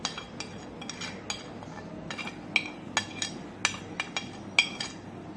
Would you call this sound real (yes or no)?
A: yes